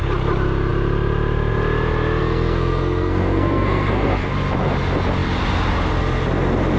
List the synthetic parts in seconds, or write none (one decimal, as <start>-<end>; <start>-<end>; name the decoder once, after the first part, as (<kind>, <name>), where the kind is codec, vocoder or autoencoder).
2.2-4.3 (codec, SNAC)